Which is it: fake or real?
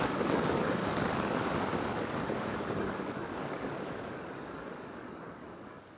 fake